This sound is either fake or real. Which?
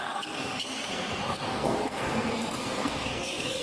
fake